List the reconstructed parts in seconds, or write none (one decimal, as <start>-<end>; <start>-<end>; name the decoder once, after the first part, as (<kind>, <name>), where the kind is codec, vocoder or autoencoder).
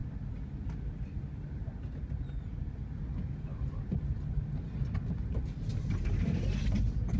none